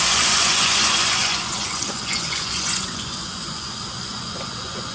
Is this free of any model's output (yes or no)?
no